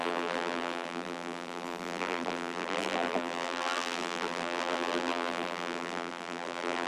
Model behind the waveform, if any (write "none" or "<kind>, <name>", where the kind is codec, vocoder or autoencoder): vocoder, BigVGAN v2